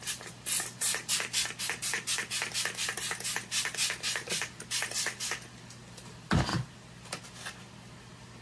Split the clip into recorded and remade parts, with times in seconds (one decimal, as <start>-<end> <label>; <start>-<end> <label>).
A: 0.0-8.4 recorded